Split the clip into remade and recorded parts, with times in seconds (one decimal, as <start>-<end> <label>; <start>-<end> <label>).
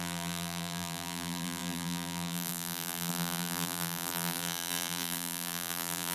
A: 0.0-6.1 remade